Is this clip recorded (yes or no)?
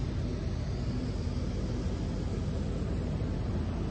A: yes